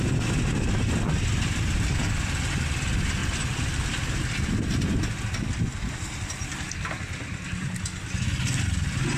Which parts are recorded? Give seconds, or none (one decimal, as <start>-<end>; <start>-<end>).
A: 0.0-3.2; 4.2-9.2

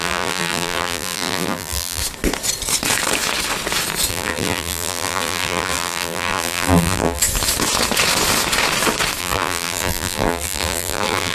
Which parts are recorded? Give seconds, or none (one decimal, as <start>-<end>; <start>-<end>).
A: 2.0-4.1; 7.2-9.2

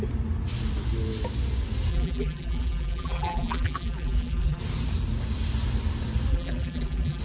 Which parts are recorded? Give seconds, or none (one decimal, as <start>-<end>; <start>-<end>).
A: 0.0-1.9; 4.6-6.3

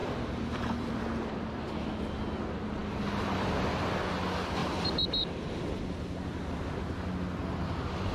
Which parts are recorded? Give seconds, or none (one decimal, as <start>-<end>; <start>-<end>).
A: 1.5-2.8; 3.5-4.6; 5.5-8.1

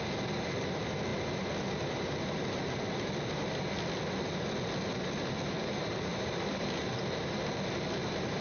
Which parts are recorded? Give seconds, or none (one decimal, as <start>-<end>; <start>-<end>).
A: 0.0-6.1; 6.9-8.4

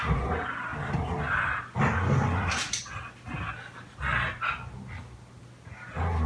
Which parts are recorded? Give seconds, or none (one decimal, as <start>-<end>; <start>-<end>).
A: 0.0-6.3

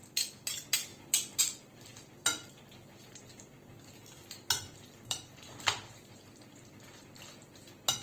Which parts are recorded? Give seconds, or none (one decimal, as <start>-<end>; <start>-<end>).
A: 0.0-8.0

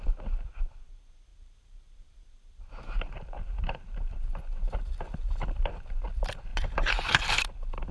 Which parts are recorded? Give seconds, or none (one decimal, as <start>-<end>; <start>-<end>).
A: 0.0-1.3; 4.3-6.5; 7.2-7.9